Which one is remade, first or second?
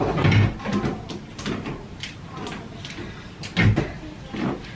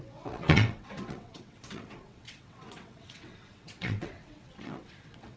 second